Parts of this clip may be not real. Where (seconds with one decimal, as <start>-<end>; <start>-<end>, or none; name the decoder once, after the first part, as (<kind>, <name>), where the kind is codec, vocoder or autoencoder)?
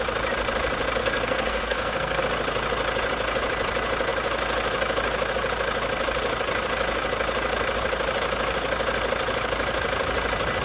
1.0-2.2 (codec, SNAC)